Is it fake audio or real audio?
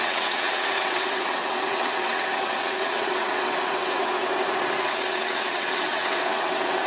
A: fake